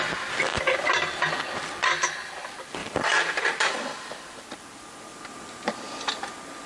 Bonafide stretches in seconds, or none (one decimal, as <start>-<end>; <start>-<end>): 0.0-0.5; 1.2-2.8; 4.4-5.1; 6.1-6.7